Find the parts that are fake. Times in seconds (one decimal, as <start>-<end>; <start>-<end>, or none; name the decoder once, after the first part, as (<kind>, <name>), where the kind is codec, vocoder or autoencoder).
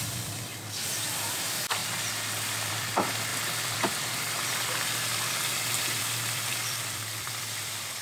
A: 0.0-0.5 (vocoder, BigVGAN v2); 1.0-1.8; 2.7-8.0